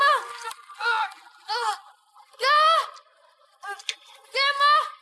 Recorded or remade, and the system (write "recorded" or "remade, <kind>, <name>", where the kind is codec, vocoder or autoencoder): recorded